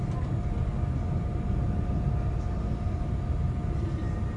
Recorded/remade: recorded